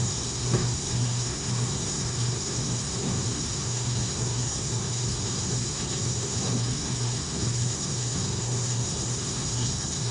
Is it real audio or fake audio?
fake